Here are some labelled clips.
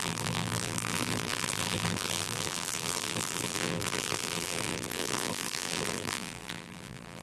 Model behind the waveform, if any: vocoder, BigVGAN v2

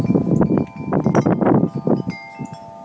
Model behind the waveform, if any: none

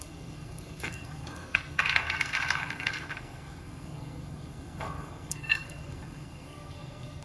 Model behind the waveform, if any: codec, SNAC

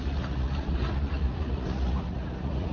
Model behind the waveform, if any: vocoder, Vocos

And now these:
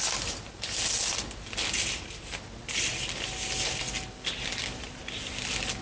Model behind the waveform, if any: none